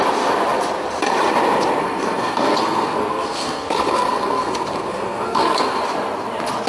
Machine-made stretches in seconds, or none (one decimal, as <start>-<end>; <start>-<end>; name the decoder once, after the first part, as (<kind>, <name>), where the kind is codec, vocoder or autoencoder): 1.8-5.8 (codec, SNAC)